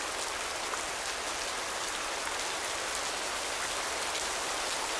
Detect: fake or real real